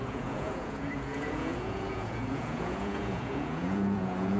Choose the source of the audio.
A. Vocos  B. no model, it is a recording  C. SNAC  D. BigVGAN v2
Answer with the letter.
A